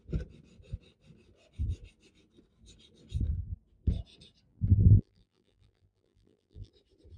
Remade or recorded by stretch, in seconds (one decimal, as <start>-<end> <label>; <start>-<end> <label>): 0.0-4.5 recorded; 4.5-6.7 remade; 6.7-7.2 recorded